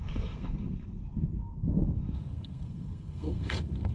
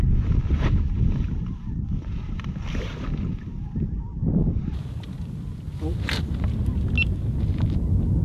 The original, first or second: second